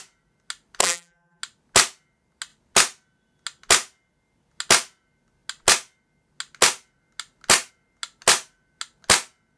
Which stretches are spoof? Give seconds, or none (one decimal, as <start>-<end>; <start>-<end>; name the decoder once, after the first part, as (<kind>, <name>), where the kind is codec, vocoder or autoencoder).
0.8-1.4 (vocoder, BigVGAN v2)